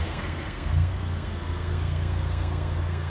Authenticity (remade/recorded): remade